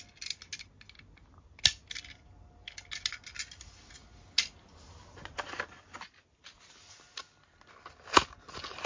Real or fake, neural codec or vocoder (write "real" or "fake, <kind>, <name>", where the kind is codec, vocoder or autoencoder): real